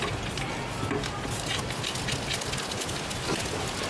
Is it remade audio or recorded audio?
recorded